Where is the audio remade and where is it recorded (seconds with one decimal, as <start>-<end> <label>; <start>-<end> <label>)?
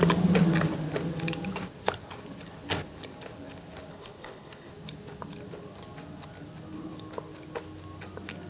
0.0-3.9 recorded; 3.9-4.7 remade; 4.7-8.5 recorded